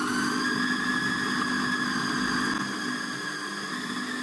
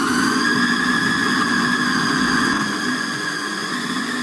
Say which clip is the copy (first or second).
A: second